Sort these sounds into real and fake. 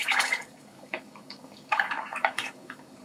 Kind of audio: fake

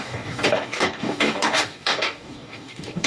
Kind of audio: fake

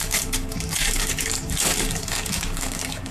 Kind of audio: fake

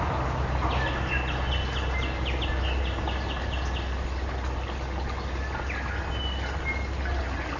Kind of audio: real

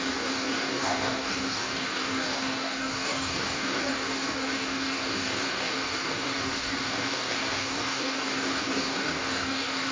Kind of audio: fake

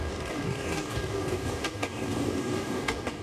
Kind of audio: fake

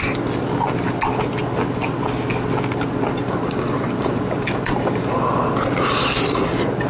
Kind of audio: real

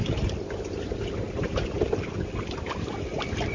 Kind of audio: real